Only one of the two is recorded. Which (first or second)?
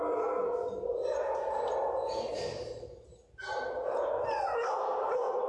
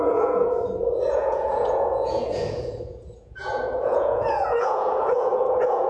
first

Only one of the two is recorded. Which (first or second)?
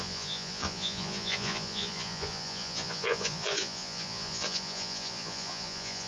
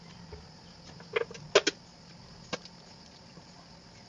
second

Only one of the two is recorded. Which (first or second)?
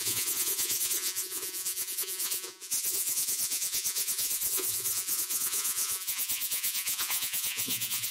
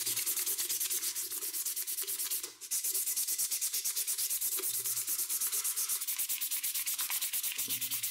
second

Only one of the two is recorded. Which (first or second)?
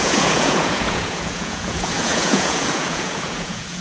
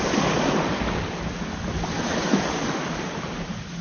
second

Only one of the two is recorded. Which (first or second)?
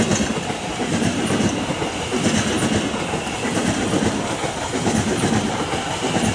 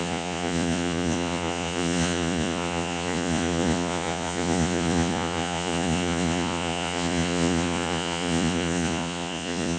first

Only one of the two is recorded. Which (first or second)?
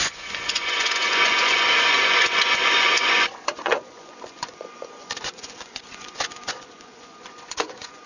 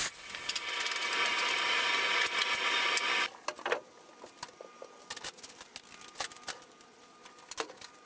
second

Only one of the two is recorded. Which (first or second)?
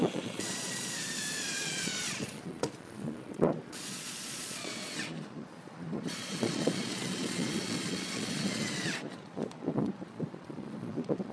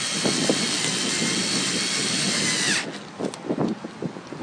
second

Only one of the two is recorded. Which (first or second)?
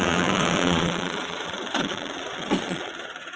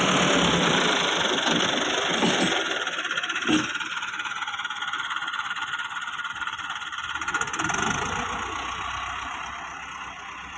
second